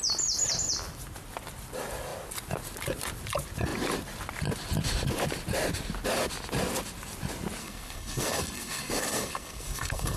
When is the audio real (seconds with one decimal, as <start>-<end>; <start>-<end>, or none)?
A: 0.0-7.6